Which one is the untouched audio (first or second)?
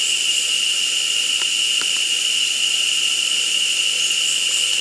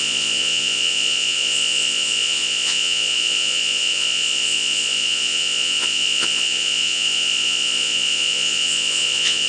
first